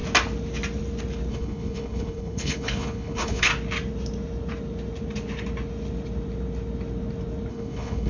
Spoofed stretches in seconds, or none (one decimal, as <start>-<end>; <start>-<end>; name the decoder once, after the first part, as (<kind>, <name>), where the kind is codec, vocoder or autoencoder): 1.3-3.5 (codec, HILCodec); 7.5-8.1

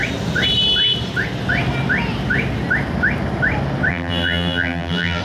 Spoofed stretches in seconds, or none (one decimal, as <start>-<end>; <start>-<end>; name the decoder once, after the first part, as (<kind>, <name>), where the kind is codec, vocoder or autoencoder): 3.9-5.2 (vocoder, BigVGAN v2)

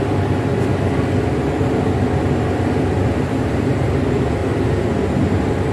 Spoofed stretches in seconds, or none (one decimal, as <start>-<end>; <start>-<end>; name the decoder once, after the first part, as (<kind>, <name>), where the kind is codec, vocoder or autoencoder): 0.0-0.5 (vocoder, BigVGAN v2); 3.1-4.4; 5.2-5.7